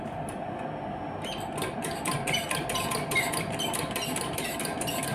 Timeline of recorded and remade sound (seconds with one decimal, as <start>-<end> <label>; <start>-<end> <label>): 0.0-1.0 remade; 1.0-4.1 recorded; 4.1-5.1 remade